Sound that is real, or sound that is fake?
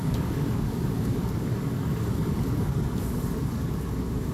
fake